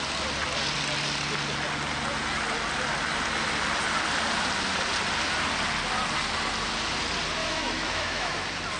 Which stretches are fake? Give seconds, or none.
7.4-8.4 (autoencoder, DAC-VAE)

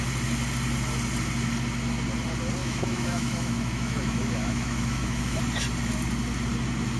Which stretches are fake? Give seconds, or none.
2.6-5.4 (autoencoder, DAC-VAE)